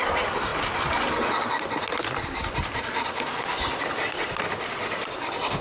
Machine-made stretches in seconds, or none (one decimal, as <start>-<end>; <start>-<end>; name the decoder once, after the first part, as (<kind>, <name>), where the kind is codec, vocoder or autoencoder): none